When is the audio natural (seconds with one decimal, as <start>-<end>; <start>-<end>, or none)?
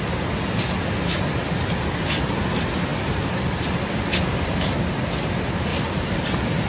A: 0.0-5.7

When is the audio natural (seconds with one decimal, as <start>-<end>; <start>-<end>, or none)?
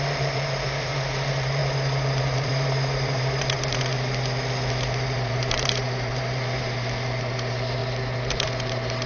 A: 1.6-2.2; 3.9-4.7; 7.8-8.3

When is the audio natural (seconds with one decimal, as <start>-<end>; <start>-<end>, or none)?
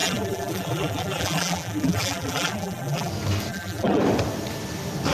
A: 3.1-3.5; 4.0-5.1